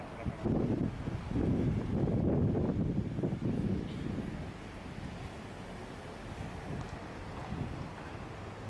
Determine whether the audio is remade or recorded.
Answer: recorded